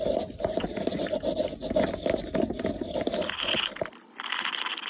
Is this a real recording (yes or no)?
yes